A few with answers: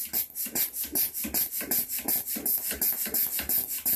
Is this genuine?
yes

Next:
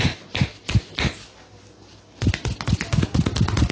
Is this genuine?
yes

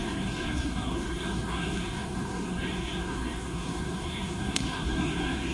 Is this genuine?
no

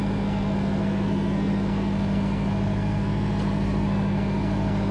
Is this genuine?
no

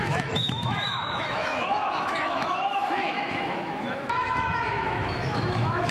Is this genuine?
no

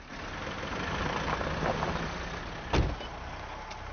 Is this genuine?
yes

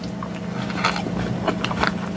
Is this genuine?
yes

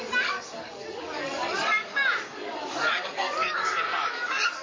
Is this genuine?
no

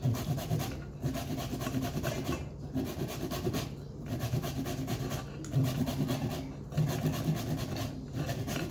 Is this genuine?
yes